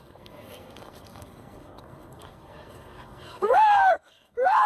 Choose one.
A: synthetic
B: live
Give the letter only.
A